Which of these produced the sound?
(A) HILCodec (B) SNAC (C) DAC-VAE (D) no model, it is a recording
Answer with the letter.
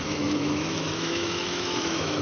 C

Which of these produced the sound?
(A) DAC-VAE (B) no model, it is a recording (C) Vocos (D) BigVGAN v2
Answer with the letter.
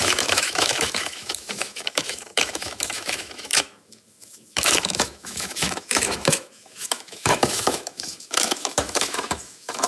A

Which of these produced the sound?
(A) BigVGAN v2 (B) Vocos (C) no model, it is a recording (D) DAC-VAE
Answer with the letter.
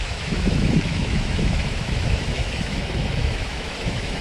D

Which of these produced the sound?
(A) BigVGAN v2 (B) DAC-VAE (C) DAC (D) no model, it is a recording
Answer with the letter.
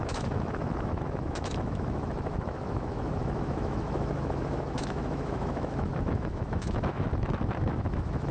B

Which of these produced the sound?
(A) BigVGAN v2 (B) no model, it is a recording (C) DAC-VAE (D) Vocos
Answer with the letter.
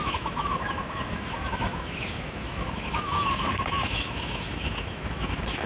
C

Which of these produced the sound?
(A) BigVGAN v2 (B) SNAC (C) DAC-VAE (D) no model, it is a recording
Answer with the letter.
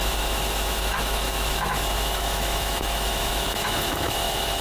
C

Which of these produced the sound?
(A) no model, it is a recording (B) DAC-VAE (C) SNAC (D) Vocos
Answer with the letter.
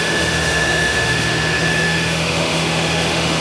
B